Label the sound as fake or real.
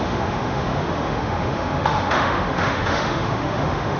fake